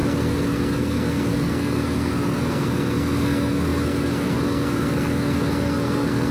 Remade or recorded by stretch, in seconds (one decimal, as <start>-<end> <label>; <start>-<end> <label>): 0.0-6.3 remade